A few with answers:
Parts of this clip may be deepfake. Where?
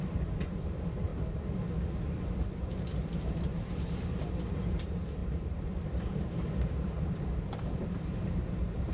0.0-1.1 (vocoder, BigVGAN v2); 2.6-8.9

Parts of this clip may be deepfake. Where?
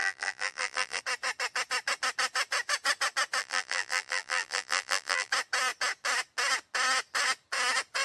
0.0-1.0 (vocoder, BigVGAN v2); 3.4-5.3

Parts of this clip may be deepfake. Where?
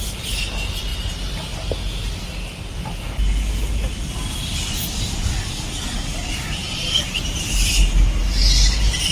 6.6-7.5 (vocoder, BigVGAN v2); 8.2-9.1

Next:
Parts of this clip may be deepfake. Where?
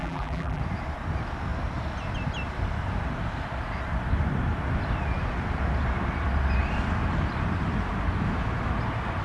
0.0-0.6 (vocoder, BigVGAN v2)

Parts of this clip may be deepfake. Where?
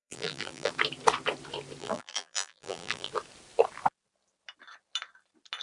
0.0-0.7 (vocoder, BigVGAN v2); 1.8-3.1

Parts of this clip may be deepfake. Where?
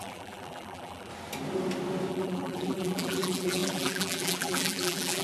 0.0-1.1 (vocoder, BigVGAN v2); 2.1-5.2